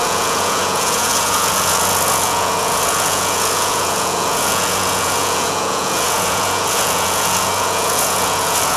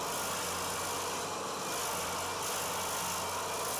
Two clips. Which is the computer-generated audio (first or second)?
first